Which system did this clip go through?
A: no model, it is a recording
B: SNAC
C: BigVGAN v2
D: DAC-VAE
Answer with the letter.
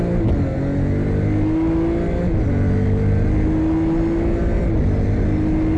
A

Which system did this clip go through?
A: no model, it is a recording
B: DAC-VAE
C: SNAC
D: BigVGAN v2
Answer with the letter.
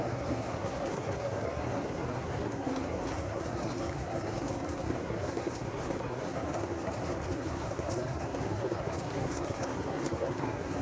C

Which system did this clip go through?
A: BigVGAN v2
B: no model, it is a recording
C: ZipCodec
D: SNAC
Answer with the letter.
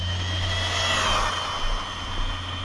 B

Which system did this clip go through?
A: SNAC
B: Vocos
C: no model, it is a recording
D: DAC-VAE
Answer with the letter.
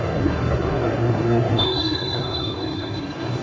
A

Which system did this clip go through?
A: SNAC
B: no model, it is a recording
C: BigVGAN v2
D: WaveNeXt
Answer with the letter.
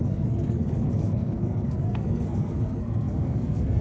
A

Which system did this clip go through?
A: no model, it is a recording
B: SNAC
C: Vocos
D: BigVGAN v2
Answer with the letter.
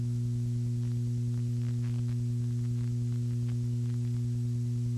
A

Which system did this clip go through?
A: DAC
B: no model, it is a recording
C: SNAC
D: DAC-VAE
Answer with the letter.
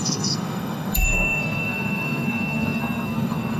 C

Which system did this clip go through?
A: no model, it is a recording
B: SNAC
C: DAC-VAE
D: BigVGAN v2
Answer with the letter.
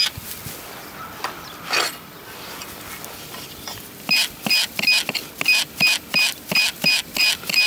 A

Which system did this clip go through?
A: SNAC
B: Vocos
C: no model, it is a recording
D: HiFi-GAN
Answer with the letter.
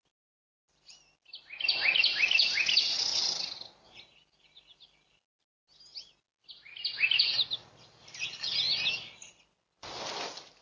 C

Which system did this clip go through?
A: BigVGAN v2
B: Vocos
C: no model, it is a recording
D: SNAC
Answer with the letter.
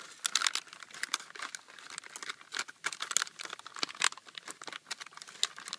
C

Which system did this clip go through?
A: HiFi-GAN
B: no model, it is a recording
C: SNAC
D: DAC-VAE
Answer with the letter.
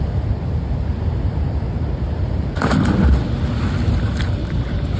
B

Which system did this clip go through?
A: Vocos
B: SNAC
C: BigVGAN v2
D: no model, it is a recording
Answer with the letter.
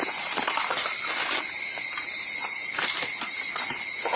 D